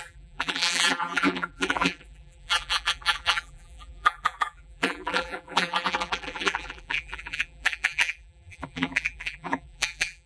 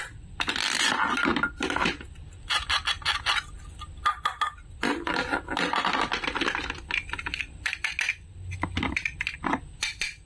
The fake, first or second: first